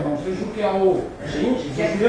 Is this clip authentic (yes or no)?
yes